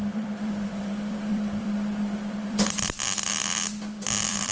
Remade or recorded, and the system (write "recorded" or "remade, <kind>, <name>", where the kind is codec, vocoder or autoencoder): remade, vocoder, BigVGAN v2